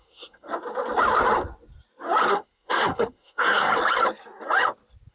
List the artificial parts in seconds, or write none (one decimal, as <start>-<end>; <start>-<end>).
0.0-0.5; 2.3-3.7